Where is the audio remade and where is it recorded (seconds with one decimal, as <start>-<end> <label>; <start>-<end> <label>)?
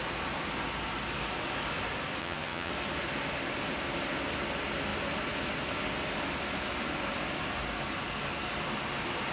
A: 0.0-2.2 recorded; 2.2-2.7 remade; 2.7-9.3 recorded